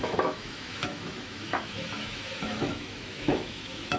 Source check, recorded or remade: remade